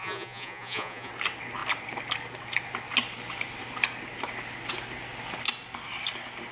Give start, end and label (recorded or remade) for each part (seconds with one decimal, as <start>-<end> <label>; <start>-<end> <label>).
0.0-1.1 remade; 1.1-6.5 recorded